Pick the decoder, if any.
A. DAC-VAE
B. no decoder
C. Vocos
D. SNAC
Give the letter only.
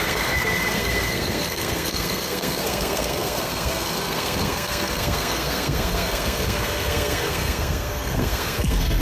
D